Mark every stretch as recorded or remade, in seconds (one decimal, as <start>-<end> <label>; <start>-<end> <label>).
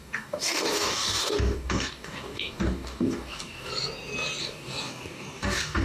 0.0-3.7 remade; 3.7-4.4 recorded; 4.4-5.8 remade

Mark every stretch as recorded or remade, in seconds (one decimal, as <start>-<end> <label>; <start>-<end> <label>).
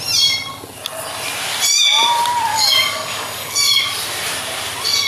0.0-2.5 recorded; 2.5-3.8 remade; 3.8-5.1 recorded